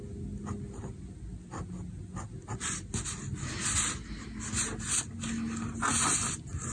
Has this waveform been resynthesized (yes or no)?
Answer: no